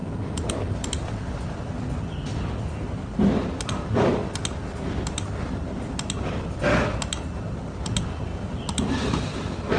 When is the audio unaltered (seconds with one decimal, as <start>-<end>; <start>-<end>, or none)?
0.0-9.8

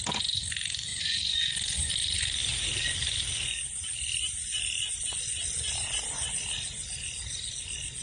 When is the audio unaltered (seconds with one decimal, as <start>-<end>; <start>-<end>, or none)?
0.0-0.9; 1.9-5.8; 6.3-8.0

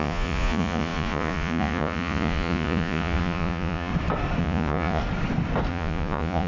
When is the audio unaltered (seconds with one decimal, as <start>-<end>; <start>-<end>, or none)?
3.9-4.4; 5.0-5.7

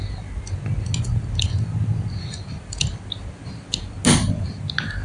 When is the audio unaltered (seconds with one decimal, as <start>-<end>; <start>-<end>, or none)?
0.0-5.0

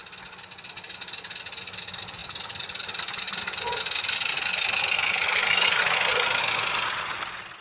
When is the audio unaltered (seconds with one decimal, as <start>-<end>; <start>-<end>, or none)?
0.0-7.6